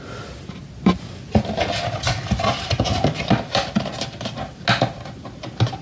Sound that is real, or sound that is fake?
real